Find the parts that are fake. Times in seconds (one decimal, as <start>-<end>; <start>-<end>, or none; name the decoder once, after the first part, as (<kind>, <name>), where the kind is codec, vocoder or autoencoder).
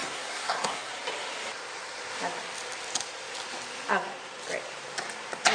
0.0-0.9 (codec, SNAC)